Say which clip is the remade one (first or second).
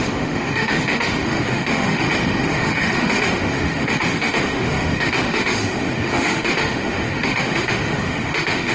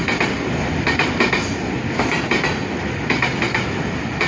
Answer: first